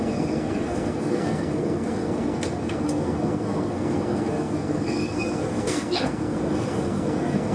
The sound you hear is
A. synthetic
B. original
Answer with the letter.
A